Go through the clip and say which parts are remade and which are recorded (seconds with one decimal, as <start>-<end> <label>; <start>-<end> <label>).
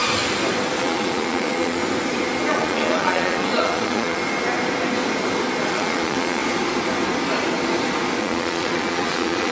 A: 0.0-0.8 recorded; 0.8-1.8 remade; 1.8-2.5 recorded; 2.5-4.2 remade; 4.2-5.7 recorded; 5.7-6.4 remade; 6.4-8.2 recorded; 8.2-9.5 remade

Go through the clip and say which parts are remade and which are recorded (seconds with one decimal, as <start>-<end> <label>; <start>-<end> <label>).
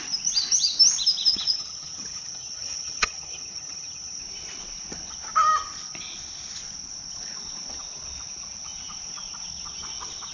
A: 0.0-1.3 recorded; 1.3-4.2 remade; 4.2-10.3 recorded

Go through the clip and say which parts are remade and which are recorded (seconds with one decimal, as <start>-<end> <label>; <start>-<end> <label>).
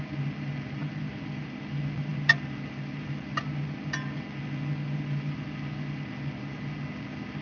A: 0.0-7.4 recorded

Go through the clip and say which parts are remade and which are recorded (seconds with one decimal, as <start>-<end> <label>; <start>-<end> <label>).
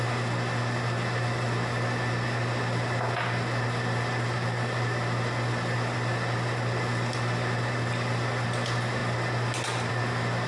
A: 0.0-10.5 recorded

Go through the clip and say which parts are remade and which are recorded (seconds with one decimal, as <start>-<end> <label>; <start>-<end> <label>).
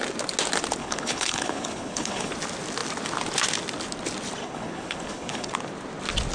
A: 0.0-0.8 recorded; 0.8-2.3 remade; 2.3-4.4 recorded; 4.4-5.5 remade; 5.5-6.3 recorded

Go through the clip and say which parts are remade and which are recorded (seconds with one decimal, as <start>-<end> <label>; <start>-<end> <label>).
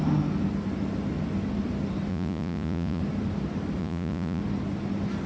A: 0.0-2.1 recorded; 2.1-3.0 remade; 3.0-3.8 recorded; 3.8-4.4 remade; 4.4-5.3 recorded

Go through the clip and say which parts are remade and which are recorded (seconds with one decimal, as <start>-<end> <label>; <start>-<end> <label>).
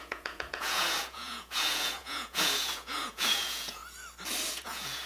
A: 0.0-3.8 remade; 3.8-4.5 recorded; 4.5-5.1 remade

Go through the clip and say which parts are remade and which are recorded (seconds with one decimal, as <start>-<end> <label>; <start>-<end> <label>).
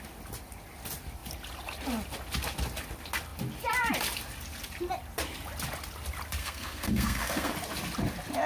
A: 0.0-6.4 recorded; 6.4-7.5 remade; 7.5-8.5 recorded